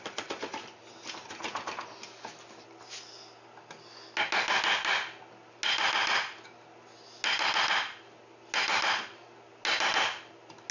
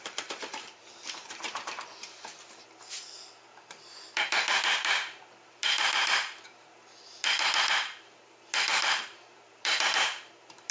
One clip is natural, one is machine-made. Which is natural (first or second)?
first